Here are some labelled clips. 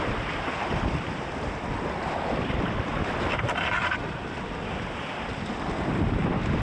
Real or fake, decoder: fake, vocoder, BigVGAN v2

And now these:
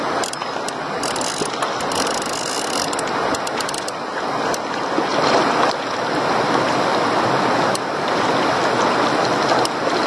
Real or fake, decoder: real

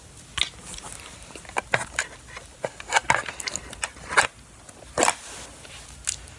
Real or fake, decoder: real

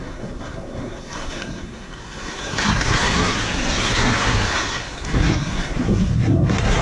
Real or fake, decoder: fake, codec, SNAC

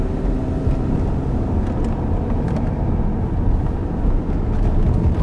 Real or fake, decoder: real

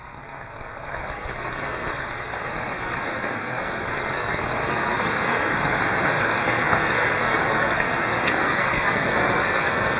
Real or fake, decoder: fake, codec, SNAC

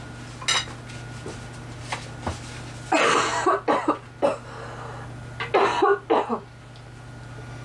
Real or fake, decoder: real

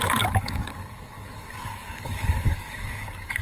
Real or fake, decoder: fake, codec, DAC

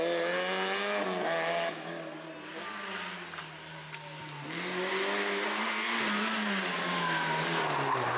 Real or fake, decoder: real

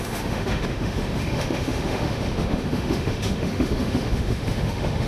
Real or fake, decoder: fake, autoencoder, DAC-VAE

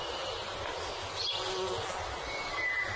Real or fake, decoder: real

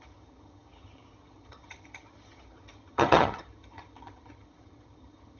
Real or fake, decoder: fake, vocoder, HiFi-GAN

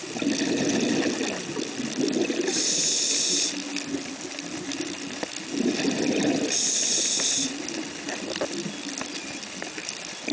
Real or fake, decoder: real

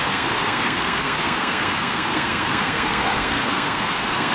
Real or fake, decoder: fake, codec, SNAC